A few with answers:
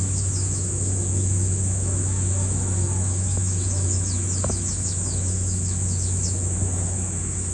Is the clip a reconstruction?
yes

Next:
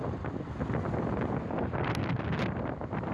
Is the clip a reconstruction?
no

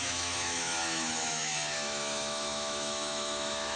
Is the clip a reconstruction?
yes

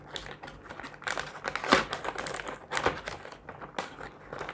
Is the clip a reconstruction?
no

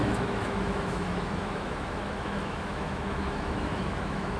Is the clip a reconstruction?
yes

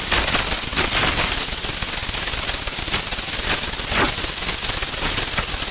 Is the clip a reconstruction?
no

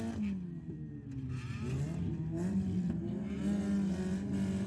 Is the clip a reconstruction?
no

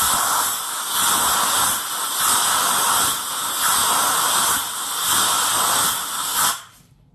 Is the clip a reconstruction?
no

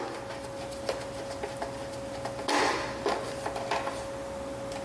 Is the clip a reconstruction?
no